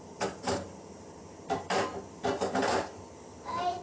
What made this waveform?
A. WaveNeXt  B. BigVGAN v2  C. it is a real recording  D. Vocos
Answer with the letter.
B